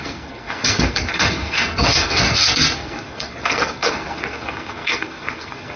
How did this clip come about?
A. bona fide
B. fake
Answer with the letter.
B